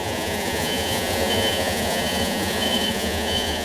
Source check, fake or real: fake